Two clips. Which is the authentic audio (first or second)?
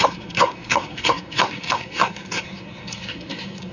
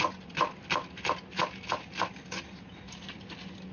second